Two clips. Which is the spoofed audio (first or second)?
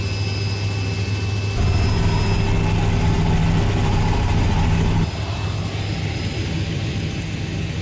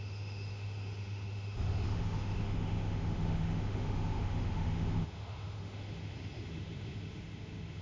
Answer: second